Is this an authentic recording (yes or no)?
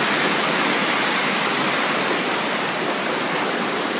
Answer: yes